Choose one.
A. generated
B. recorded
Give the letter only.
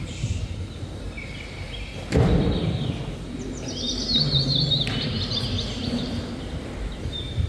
B